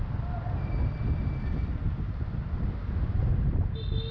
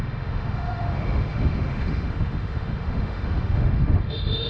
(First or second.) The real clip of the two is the first